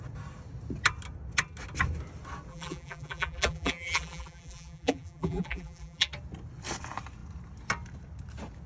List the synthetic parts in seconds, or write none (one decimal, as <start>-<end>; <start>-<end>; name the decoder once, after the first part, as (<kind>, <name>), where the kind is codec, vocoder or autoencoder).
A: 2.5-6.1 (vocoder, BigVGAN v2)